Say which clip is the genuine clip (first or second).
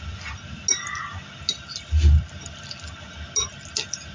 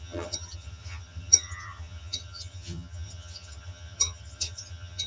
first